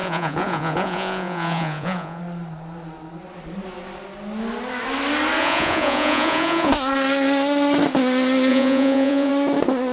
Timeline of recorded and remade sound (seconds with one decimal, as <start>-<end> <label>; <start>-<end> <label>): 0.0-2.2 remade; 2.2-5.4 recorded; 5.4-6.7 remade; 6.7-8.5 recorded; 8.5-9.3 remade; 9.3-9.9 recorded

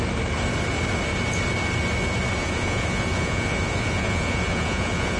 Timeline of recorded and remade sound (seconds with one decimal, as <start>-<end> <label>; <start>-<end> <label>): 0.0-2.4 recorded; 2.4-5.2 remade

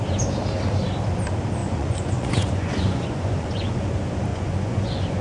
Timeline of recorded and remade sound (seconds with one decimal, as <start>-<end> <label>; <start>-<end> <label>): 0.0-1.6 recorded; 1.6-3.9 remade; 3.9-4.3 recorded; 4.3-5.2 remade

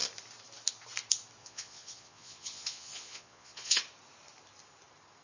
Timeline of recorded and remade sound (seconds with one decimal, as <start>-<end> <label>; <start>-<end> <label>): 0.0-1.4 recorded; 1.4-3.8 remade; 3.8-5.2 recorded

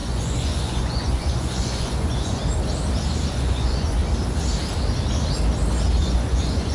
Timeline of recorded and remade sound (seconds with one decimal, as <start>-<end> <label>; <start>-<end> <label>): 0.0-2.4 remade; 2.4-3.3 recorded; 3.3-4.0 remade; 4.0-6.0 recorded; 6.0-6.7 remade

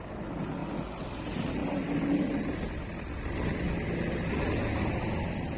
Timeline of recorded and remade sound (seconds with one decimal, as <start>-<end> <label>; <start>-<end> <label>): 0.0-5.6 recorded